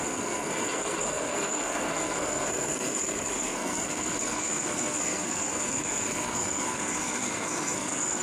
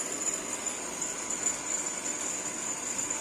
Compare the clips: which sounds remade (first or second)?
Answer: first